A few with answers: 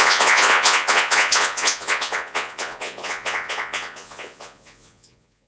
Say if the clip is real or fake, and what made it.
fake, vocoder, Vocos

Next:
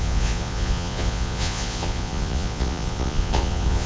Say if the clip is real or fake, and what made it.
fake, vocoder, Vocos